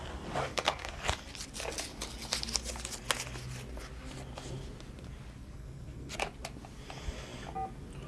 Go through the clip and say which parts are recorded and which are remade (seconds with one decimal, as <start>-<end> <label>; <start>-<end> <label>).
0.0-0.4 recorded; 0.4-1.0 remade; 1.0-5.4 recorded; 5.4-6.1 remade; 6.1-8.1 recorded